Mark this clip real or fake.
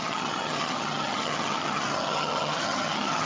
fake